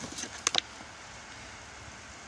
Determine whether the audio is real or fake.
real